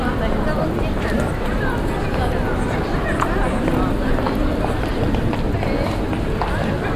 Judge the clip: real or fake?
real